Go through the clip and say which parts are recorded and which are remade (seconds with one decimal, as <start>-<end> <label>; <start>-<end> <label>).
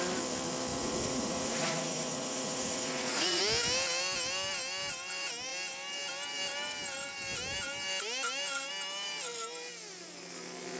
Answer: 0.0-0.7 recorded; 0.7-3.4 remade; 3.4-10.8 recorded